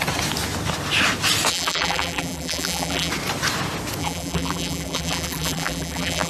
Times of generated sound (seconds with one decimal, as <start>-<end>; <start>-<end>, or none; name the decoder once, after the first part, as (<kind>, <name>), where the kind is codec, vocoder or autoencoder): 1.5-3.1 (vocoder, BigVGAN v2); 4.0-6.3